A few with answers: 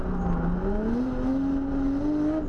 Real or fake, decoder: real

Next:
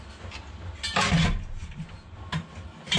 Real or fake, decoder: real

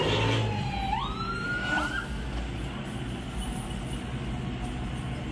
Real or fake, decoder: real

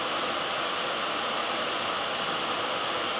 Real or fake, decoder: real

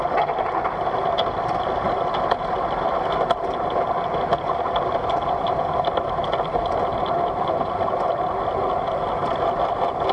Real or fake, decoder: real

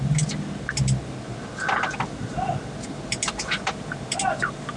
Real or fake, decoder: real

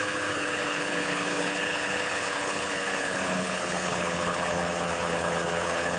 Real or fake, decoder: fake, codec, HILCodec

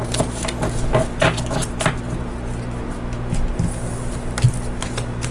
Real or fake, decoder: real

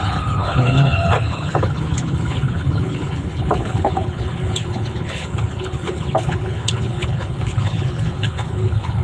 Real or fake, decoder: fake, codec, HILCodec